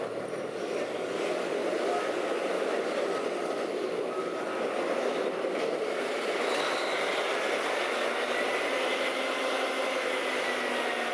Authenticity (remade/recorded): recorded